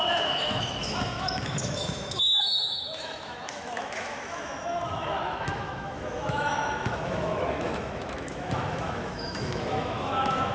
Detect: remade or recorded remade